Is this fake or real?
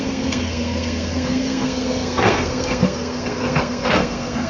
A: fake